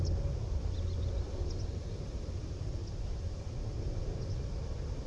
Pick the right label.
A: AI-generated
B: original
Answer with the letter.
B